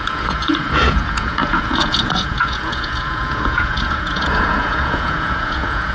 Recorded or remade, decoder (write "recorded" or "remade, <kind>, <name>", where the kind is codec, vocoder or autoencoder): remade, vocoder, Vocos